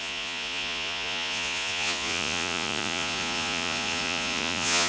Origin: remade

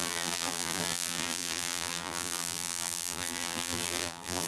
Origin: remade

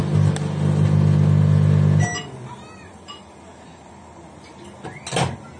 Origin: recorded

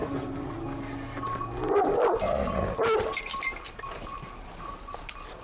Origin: recorded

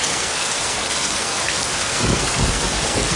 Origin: remade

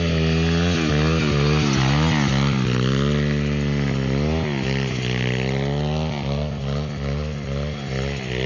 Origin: recorded